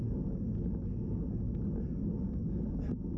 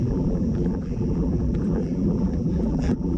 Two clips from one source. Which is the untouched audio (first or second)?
first